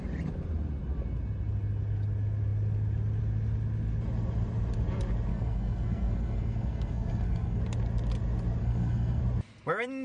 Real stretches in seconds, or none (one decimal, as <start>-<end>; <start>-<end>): 0.0-5.3; 7.6-8.6; 9.2-10.0